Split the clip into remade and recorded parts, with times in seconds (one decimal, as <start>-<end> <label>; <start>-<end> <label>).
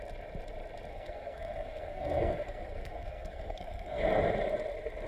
0.0-0.9 recorded; 0.9-4.0 remade; 4.0-5.1 recorded